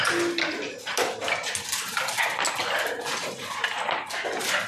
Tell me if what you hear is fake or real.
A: real